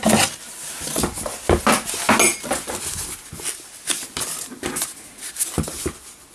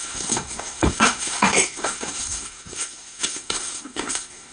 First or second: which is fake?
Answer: second